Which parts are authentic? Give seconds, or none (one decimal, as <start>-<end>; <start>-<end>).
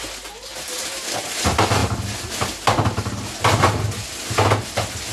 0.0-5.1